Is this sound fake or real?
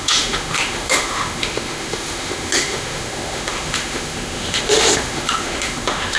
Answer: fake